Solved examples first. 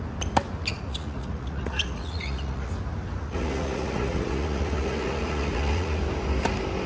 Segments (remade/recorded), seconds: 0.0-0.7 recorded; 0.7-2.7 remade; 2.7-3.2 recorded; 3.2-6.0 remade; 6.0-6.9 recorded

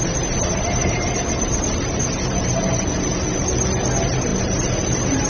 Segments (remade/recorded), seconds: 0.0-0.8 recorded; 0.8-3.6 remade; 3.6-4.3 recorded; 4.3-5.3 remade

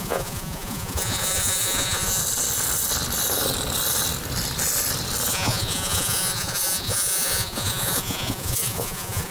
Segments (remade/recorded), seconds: 0.0-2.2 remade; 2.2-5.3 recorded; 5.3-9.3 remade

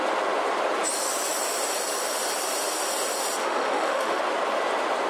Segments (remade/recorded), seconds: 0.0-3.4 recorded; 3.4-4.2 remade; 4.2-5.1 recorded

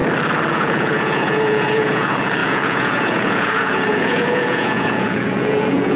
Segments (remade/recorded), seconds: 0.0-0.5 recorded; 0.5-6.0 remade

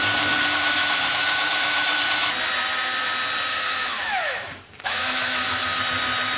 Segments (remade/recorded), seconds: 0.0-0.8 recorded; 0.8-2.0 remade; 2.0-3.5 recorded; 3.5-5.8 remade; 5.8-6.4 recorded

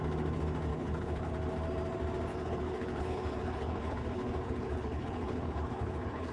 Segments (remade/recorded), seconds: 0.0-0.7 recorded; 0.7-1.3 remade; 1.3-2.3 recorded; 2.3-6.3 remade